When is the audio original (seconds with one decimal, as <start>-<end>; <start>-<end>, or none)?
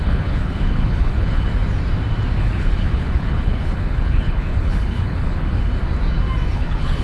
1.5-2.4; 5.7-6.5